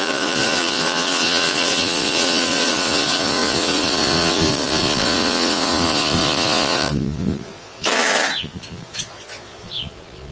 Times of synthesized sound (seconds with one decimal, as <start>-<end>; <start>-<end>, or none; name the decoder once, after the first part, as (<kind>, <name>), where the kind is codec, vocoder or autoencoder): 0.0-10.3 (vocoder, Vocos)